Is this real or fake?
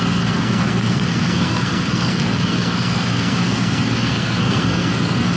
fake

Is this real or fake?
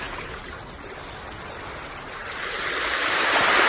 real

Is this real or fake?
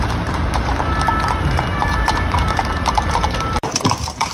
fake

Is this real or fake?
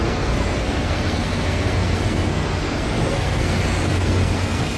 fake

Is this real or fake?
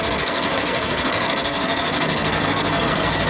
fake